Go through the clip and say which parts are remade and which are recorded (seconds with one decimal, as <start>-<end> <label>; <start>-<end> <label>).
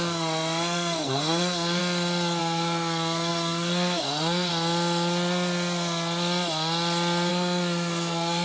0.0-1.8 remade; 1.8-2.4 recorded; 2.4-4.5 remade; 4.5-7.3 recorded; 7.3-8.4 remade